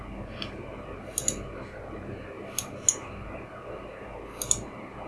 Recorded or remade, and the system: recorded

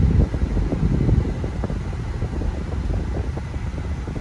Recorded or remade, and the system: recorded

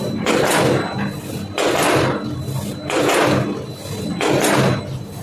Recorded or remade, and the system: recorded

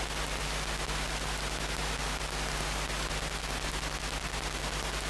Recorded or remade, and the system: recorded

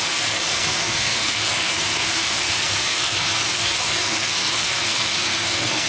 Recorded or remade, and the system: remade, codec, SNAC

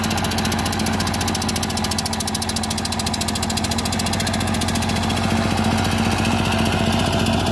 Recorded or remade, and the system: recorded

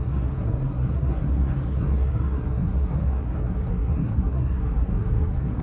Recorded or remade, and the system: remade, codec, SNAC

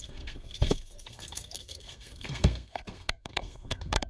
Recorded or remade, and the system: remade, codec, SNAC